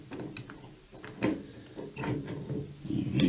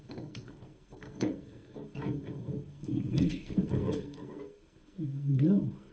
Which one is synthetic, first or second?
second